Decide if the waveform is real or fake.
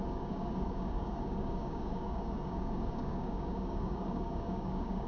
fake